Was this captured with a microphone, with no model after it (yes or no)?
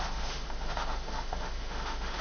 no